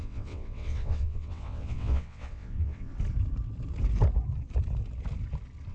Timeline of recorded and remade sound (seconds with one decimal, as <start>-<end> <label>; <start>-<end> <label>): 0.0-2.9 remade; 2.9-5.7 recorded

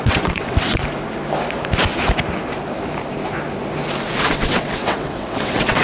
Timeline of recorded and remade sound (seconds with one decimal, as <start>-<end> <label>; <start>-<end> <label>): 0.0-0.8 remade; 0.8-4.3 recorded; 4.3-5.8 remade

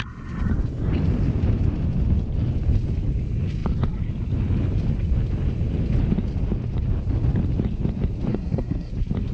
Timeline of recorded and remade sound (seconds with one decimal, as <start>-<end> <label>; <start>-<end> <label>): 0.0-8.3 recorded; 8.3-8.9 remade; 8.9-9.3 recorded